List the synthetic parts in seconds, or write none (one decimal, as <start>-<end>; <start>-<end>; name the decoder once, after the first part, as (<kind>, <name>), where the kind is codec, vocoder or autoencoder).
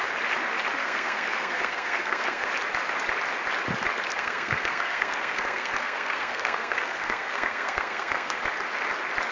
0.8-2.5 (codec, SNAC); 4.1-8.4